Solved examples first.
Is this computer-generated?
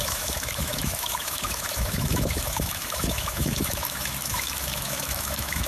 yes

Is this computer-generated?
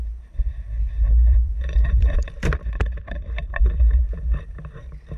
yes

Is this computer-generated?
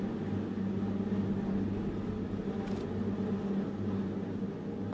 no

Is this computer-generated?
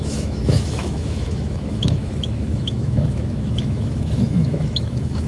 yes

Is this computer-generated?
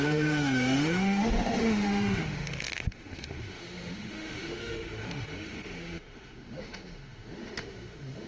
yes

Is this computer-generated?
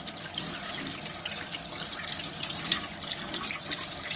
no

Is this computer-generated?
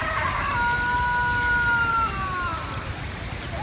no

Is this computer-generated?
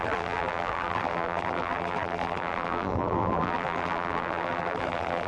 yes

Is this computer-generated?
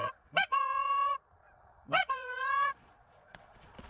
yes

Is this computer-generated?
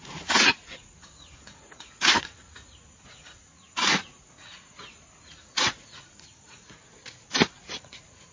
yes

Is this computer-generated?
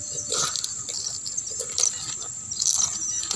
no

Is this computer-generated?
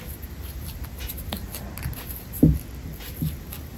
no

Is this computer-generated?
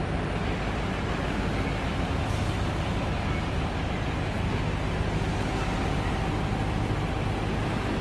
no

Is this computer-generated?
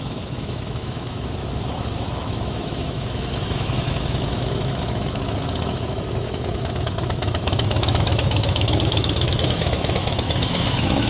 yes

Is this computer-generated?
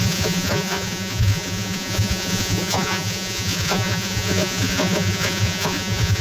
yes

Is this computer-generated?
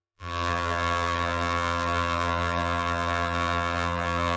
yes